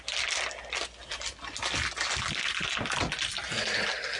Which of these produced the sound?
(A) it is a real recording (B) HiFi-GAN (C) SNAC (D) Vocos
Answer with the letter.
A